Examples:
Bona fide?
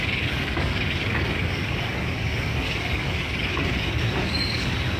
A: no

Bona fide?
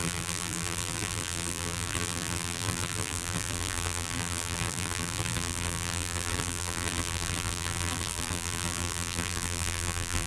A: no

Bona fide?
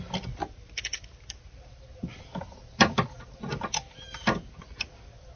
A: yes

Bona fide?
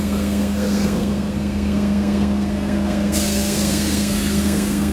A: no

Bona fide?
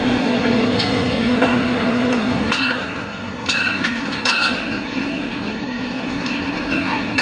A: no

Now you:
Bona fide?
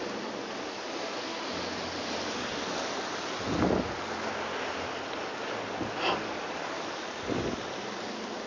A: yes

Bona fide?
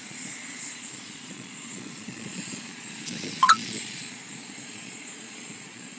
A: no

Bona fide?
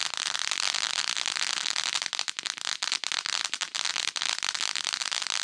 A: yes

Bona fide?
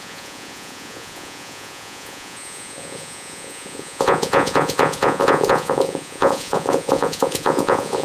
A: no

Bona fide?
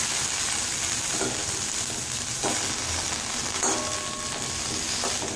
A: yes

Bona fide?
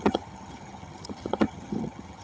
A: no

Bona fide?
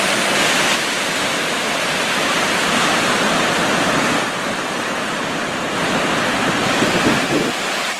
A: yes